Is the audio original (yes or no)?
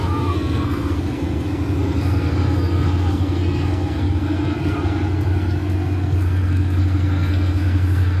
no